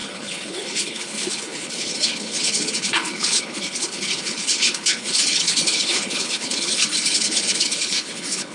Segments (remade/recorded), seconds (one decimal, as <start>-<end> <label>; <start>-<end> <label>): 0.0-8.5 remade